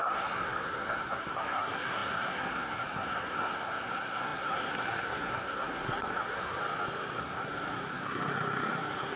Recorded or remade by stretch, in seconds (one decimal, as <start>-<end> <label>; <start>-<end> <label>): 0.0-6.6 remade; 6.6-7.2 recorded; 7.2-9.2 remade